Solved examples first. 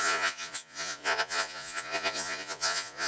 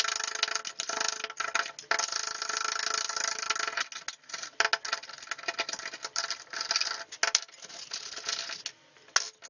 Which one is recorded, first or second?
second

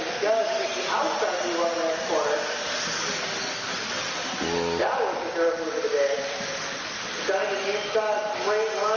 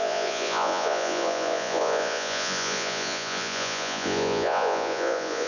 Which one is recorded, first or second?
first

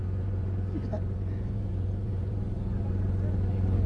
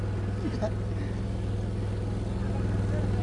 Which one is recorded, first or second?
second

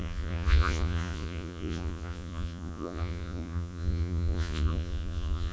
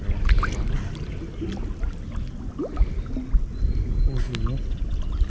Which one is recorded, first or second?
second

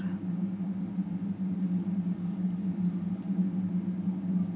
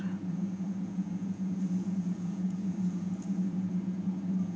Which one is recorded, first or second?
first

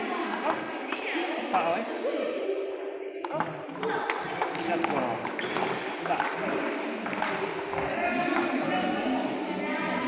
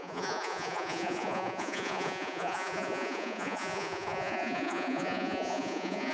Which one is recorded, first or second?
first